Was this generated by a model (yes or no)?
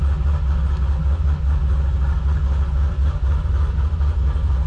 no